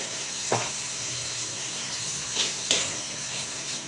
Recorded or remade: remade